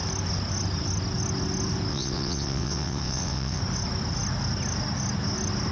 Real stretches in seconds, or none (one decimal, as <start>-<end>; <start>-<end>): 0.0-1.9; 3.6-5.7